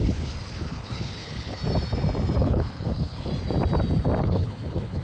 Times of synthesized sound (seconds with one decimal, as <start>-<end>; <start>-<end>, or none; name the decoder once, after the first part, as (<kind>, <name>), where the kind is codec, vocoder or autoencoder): 0.0-1.6 (codec, HILCodec); 2.4-3.3; 4.2-5.0